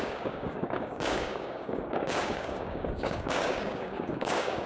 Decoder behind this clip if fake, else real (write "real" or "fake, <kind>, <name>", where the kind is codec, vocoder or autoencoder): fake, codec, DAC